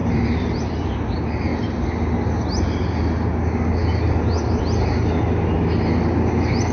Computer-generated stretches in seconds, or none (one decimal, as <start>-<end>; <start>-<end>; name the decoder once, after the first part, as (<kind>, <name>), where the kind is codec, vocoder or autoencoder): 0.0-0.9 (vocoder, BigVGAN v2); 3.8-4.6

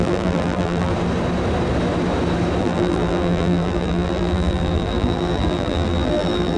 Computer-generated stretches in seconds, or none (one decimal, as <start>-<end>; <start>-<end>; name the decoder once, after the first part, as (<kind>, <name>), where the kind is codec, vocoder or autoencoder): 0.0-0.9 (vocoder, BigVGAN v2); 2.6-6.6

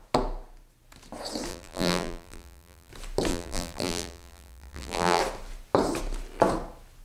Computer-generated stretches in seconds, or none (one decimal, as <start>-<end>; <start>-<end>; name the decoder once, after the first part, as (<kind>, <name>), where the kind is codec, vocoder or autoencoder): 1.5-2.9 (vocoder, BigVGAN v2); 3.3-5.2

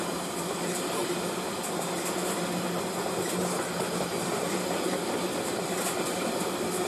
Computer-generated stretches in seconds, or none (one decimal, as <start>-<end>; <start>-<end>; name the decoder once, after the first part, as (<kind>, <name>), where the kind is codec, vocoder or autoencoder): 0.0-1.0 (vocoder, BigVGAN v2); 4.2-6.9

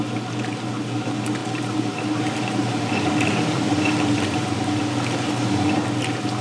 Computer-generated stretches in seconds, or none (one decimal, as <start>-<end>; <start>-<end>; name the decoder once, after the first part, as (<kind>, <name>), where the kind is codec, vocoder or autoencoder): 1.4-4.8 (vocoder, BigVGAN v2)

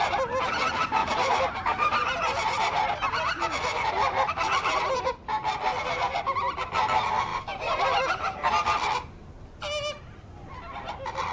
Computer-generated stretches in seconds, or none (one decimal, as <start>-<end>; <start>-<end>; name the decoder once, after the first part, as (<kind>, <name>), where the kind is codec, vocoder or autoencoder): 1.0-3.9 (vocoder, BigVGAN v2); 7.3-8.5

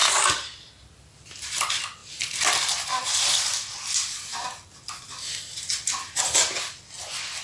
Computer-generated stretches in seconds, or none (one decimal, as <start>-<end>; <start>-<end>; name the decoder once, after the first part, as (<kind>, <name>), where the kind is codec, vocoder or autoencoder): 3.0-7.4 (vocoder, BigVGAN v2)